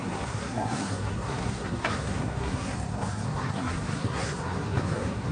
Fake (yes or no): yes